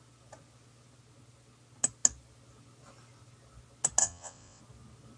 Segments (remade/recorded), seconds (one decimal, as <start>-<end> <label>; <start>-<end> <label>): 0.0-4.0 recorded; 4.0-4.6 remade; 4.6-5.2 recorded